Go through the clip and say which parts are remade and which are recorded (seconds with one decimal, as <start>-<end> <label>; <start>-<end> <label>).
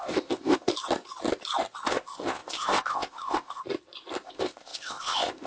0.0-0.7 remade; 0.7-1.9 recorded; 1.9-3.6 remade; 3.6-4.2 recorded; 4.2-5.5 remade